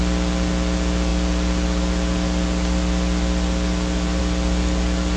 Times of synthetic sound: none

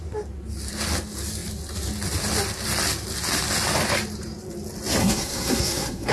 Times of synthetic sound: 5.0-6.1 (codec, SNAC)